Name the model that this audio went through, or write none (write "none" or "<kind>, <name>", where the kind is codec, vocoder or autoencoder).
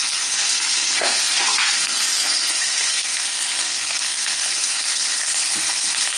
codec, SNAC